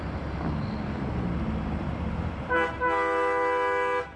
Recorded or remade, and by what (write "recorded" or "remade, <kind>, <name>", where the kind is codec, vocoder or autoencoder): recorded